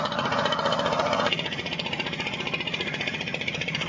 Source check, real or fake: fake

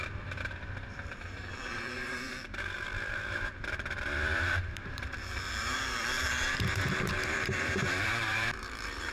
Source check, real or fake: fake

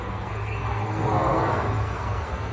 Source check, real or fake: fake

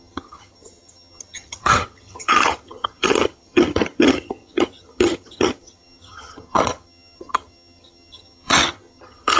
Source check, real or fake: fake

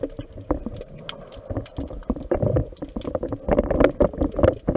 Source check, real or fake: real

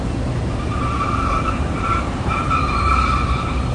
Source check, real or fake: fake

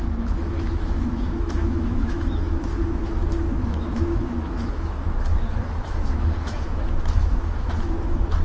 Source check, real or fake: fake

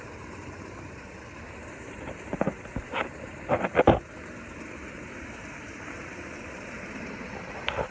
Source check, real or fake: fake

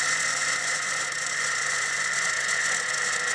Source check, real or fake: fake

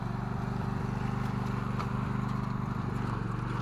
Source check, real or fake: real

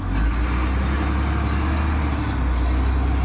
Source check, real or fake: real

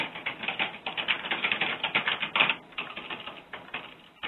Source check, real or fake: real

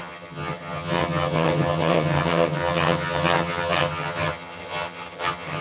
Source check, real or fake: fake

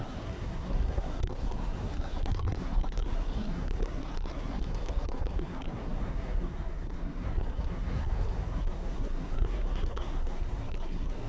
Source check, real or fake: fake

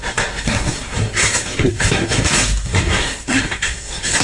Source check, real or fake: fake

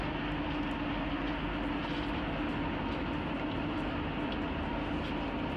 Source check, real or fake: real